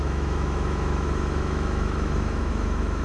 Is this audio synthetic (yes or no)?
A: yes